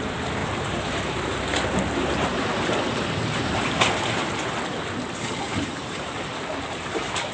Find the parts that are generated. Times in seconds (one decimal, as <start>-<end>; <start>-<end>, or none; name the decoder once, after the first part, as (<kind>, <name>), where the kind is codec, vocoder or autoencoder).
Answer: 0.4-1.4 (vocoder, BigVGAN v2); 2.3-3.9; 5.5-6.2